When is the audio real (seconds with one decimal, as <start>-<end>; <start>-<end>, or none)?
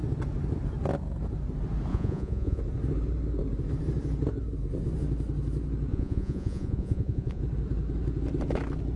0.0-1.9; 2.6-5.9; 7.4-9.0